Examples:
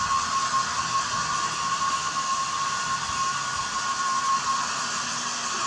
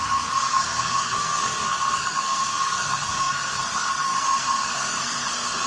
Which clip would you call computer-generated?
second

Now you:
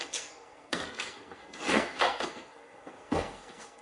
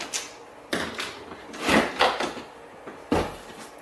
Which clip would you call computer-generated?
first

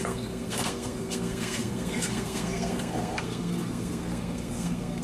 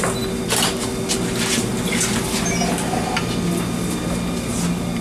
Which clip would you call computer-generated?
first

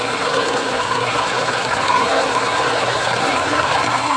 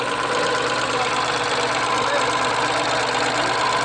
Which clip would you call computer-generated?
first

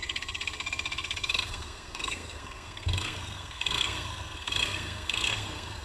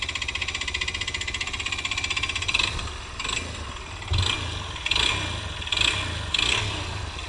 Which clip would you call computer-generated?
first